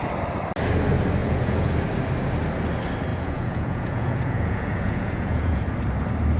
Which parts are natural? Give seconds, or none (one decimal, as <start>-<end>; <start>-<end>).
0.0-1.2; 1.7-3.1; 5.6-6.4